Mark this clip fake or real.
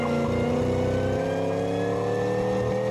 real